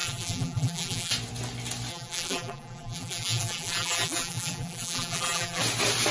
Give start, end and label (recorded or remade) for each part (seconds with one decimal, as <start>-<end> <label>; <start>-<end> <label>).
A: 0.0-1.1 remade; 1.1-1.9 recorded; 1.9-5.6 remade; 5.6-6.1 recorded